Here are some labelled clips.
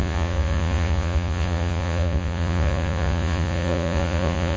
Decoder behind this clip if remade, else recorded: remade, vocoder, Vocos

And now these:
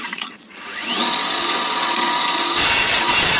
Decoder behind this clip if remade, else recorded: remade, vocoder, Vocos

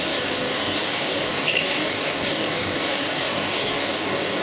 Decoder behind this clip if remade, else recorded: remade, codec, DAC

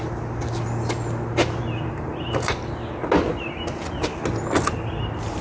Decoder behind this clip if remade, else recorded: recorded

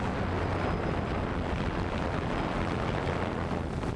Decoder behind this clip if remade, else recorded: recorded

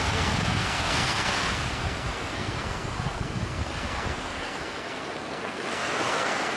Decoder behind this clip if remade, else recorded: remade, codec, SNAC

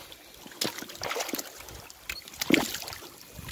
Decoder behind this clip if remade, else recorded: recorded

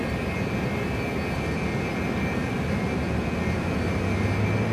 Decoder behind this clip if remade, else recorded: recorded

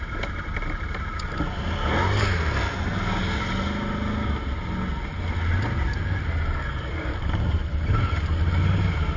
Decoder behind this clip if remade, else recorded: recorded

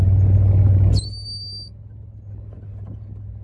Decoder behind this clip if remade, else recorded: recorded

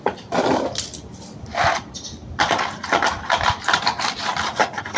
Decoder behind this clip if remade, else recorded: remade, vocoder, BigVGAN v2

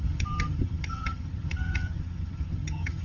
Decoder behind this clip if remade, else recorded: remade, vocoder, HiFi-GAN